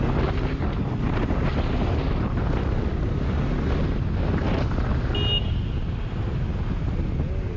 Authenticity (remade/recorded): recorded